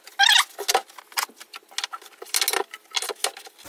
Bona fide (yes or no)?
yes